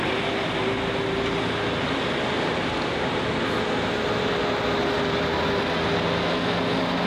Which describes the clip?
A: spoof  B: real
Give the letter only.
B